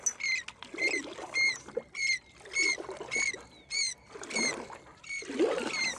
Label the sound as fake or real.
real